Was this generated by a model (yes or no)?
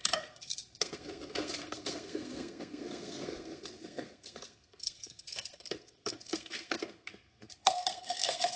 yes